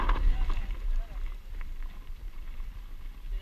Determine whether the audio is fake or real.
real